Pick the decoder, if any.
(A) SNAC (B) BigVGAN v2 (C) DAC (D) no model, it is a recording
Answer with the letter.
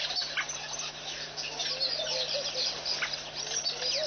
D